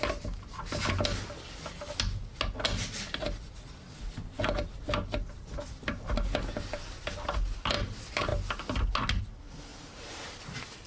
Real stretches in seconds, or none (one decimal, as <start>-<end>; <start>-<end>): 0.0-9.7; 10.4-10.9